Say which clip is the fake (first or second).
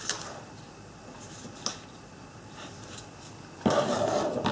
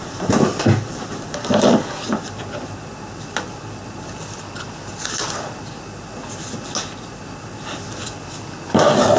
first